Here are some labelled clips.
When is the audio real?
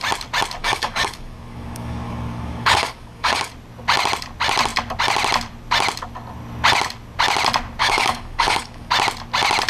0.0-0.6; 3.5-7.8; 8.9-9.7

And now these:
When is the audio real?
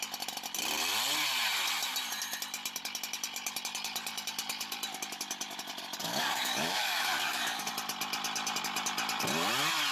0.0-6.0; 7.7-9.9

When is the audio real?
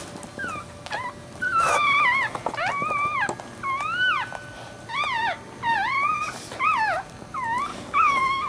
0.0-7.7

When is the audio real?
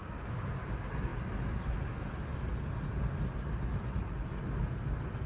0.5-5.3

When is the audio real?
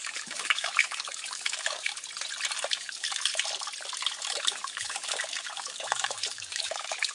1.9-2.7; 3.3-4.2